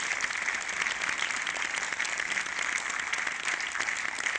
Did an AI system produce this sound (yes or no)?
no